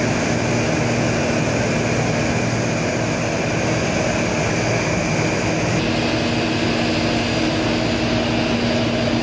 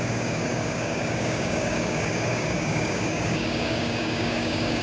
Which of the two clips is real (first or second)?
first